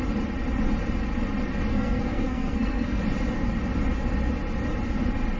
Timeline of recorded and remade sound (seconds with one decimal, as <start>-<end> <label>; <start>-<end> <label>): 0.0-1.7 recorded; 1.7-3.0 remade; 3.0-5.4 recorded